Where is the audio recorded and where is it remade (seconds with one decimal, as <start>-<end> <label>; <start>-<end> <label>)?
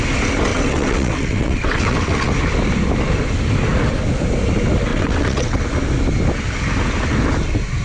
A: 0.0-0.5 recorded; 0.5-2.3 remade; 2.3-4.9 recorded; 4.9-5.6 remade; 5.6-7.8 recorded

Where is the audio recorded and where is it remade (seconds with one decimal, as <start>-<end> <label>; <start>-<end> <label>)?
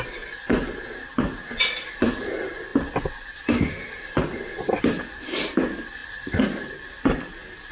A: 0.0-7.7 recorded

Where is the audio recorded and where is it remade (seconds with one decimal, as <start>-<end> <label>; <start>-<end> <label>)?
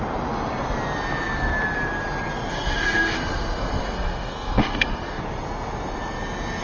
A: 0.0-2.5 recorded; 2.5-5.2 remade; 5.2-6.6 recorded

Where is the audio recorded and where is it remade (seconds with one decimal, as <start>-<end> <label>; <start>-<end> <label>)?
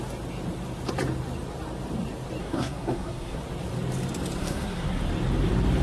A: 0.0-2.4 recorded; 2.4-3.4 remade; 3.4-4.4 recorded; 4.4-5.0 remade; 5.0-5.8 recorded